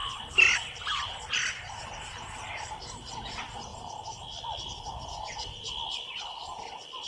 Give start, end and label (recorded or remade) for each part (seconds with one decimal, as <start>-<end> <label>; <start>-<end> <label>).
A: 0.0-7.1 recorded